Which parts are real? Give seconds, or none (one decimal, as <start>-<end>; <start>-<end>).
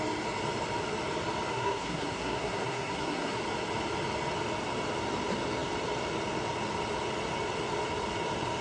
0.0-1.5; 3.4-8.6